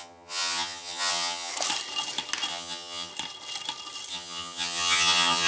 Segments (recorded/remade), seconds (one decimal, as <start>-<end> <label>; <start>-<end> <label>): 0.0-1.5 remade; 1.5-2.5 recorded; 2.5-3.1 remade; 3.1-4.1 recorded; 4.1-5.5 remade

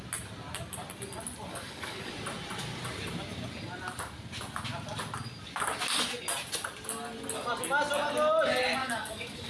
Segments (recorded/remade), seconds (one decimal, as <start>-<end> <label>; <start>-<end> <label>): 0.0-1.5 recorded; 1.5-2.1 remade; 2.1-8.8 recorded; 8.8-9.5 remade

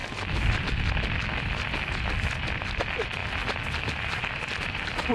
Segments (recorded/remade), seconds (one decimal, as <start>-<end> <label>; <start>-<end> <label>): 0.0-5.1 recorded

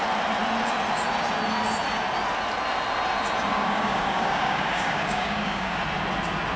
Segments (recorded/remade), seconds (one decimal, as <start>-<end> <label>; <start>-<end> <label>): 0.0-3.5 recorded; 3.5-5.8 remade; 5.8-6.6 recorded

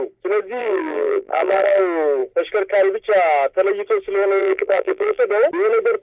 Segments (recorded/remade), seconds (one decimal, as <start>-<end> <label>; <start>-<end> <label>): 0.0-0.6 recorded; 0.6-1.8 remade; 1.8-4.4 recorded; 4.4-5.2 remade; 5.2-6.0 recorded

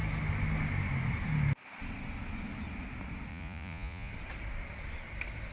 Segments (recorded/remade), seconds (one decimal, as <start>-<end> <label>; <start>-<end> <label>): 0.0-3.3 recorded; 3.3-4.1 remade; 4.1-5.5 recorded

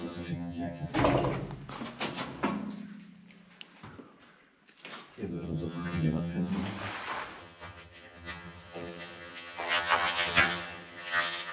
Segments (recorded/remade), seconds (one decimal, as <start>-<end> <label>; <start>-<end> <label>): 0.0-0.9 remade; 0.9-5.3 recorded; 5.3-6.5 remade; 6.5-7.4 recorded; 7.4-11.5 remade

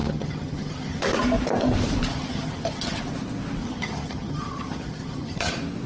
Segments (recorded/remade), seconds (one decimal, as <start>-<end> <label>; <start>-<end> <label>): 0.0-1.0 remade; 1.0-2.1 recorded; 2.1-3.0 remade; 3.0-3.6 recorded; 3.6-5.5 remade; 5.5-5.9 recorded